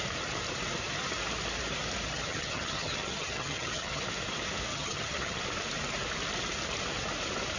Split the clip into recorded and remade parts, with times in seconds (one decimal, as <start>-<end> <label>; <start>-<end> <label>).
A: 0.0-2.1 recorded; 2.1-4.0 remade; 4.0-4.7 recorded; 4.7-5.4 remade; 5.4-7.6 recorded